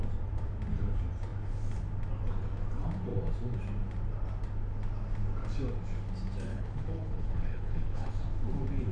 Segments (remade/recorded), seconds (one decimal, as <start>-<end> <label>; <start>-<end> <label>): 0.0-6.5 recorded; 6.5-8.1 remade; 8.1-8.9 recorded